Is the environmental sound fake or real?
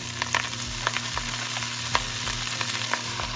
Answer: real